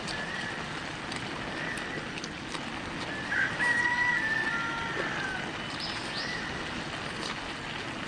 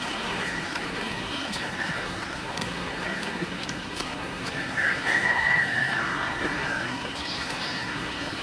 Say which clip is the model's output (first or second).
second